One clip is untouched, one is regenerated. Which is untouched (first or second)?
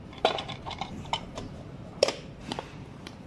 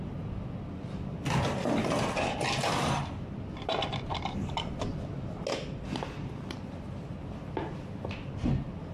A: second